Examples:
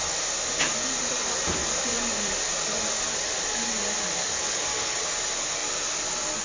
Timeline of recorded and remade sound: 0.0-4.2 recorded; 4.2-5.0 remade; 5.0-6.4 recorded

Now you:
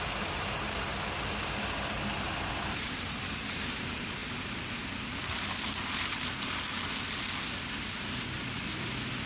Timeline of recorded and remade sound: 0.0-0.9 remade; 0.9-2.5 recorded; 2.5-4.2 remade; 4.2-9.3 recorded

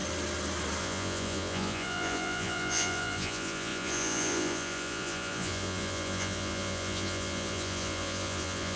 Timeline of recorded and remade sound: 0.0-0.8 recorded; 0.8-8.8 remade

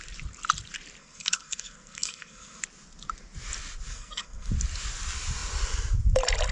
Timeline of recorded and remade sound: 0.0-1.0 recorded; 1.0-2.6 remade; 2.6-3.9 recorded; 3.9-4.5 remade; 4.5-6.5 recorded

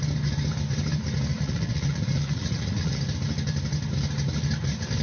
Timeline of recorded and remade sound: 0.0-1.3 recorded; 1.3-3.0 remade; 3.0-5.0 recorded